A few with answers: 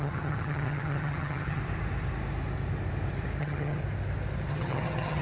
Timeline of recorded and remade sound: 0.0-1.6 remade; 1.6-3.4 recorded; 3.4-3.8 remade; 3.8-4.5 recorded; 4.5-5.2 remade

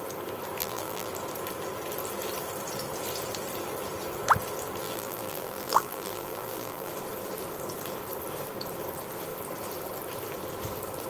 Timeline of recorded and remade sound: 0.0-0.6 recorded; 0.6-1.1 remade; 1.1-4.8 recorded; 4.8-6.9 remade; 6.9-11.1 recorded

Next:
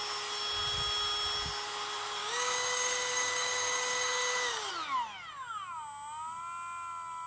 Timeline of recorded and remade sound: 0.0-2.2 recorded; 2.2-4.7 remade; 4.7-7.3 recorded

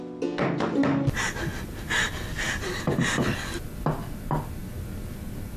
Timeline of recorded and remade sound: 0.0-5.6 recorded

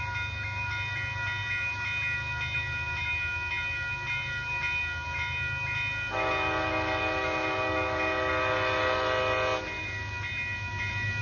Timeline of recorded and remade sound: 0.0-11.2 recorded

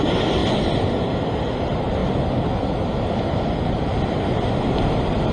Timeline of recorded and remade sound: 0.0-0.4 remade; 0.4-1.6 recorded; 1.6-2.0 remade; 2.0-5.3 recorded

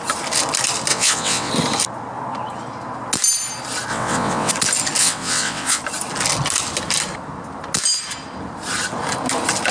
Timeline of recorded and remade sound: 0.0-0.9 recorded; 0.9-1.5 remade; 1.5-3.9 recorded; 3.9-4.5 remade; 4.5-5.0 recorded; 5.0-5.8 remade; 5.8-9.7 recorded